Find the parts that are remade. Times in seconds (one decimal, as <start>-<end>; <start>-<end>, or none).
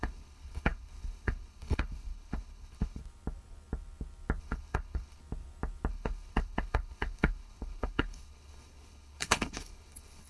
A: 0.0-3.0; 4.4-5.2; 5.9-10.3